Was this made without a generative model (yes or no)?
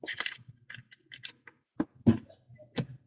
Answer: yes